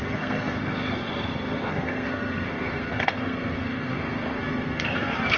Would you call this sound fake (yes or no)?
yes